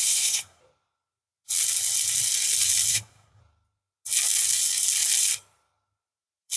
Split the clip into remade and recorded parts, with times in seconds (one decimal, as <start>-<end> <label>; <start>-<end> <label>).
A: 0.0-0.6 remade; 0.6-2.9 recorded; 2.9-3.4 remade; 3.4-6.6 recorded